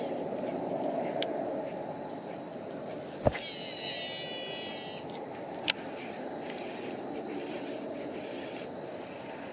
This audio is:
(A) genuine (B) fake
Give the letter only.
A